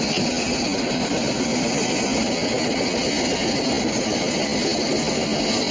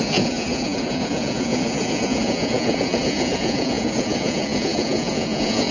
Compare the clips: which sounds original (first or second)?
first